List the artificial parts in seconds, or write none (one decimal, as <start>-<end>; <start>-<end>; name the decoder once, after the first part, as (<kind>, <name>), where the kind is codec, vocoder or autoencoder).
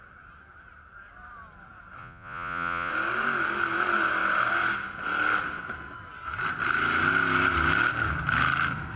2.0-2.9 (vocoder, Vocos)